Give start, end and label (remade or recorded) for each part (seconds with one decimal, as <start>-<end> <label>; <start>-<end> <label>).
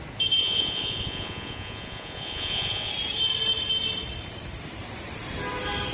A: 0.0-0.4 recorded; 0.4-2.9 remade; 2.9-5.9 recorded